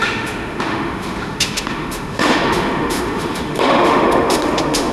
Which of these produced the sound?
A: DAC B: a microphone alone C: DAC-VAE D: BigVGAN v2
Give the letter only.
C